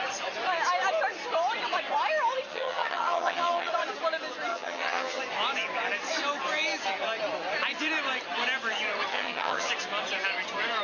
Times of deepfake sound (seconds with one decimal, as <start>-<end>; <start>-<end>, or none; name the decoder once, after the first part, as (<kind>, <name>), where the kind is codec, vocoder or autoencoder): 2.5-3.7 (vocoder, HiFi-GAN); 4.5-5.2; 9.1-9.7